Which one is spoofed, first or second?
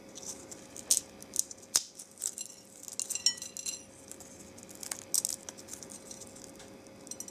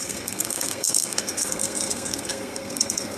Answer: second